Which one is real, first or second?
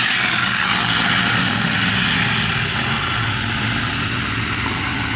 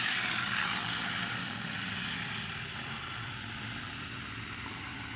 first